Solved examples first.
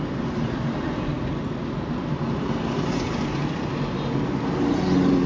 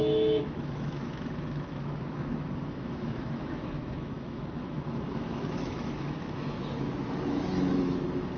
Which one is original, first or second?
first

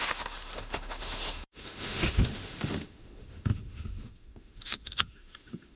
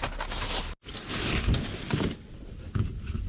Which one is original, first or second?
second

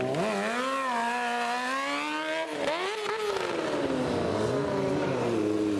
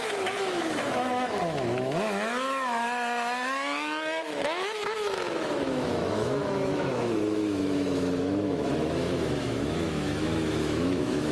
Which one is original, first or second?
first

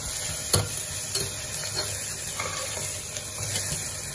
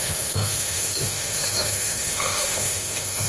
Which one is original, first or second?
first